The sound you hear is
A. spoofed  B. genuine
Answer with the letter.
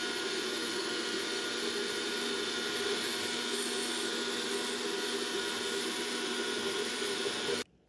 B